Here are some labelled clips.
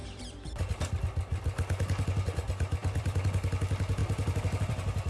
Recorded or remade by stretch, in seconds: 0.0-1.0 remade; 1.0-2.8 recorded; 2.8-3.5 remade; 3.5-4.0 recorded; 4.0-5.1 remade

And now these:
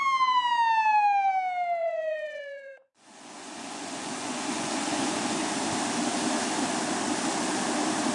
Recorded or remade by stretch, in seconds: 0.0-1.8 recorded; 1.8-5.5 remade; 5.5-8.1 recorded

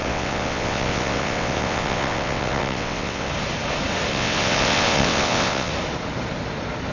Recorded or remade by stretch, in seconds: 0.0-3.3 remade; 3.3-4.1 recorded; 4.1-5.7 remade; 5.7-6.9 recorded

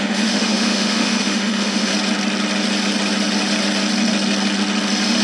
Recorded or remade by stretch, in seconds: 0.0-1.9 remade; 1.9-5.2 recorded

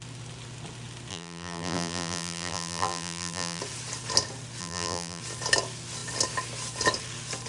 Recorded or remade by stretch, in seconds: 0.0-1.1 recorded; 1.1-3.6 remade; 3.6-4.6 recorded; 4.6-5.2 remade; 5.2-7.5 recorded

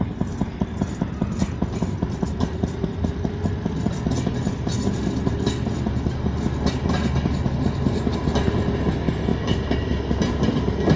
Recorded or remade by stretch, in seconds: 0.0-11.0 recorded

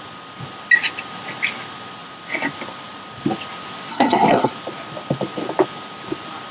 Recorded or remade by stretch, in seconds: 0.0-3.9 recorded; 3.9-4.5 remade; 4.5-6.5 recorded

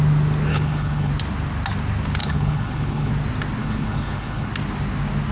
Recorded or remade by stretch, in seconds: 0.0-0.5 recorded; 0.5-1.1 remade; 1.1-2.2 recorded; 2.2-3.1 remade; 3.1-3.6 recorded; 3.6-4.5 remade; 4.5-5.3 recorded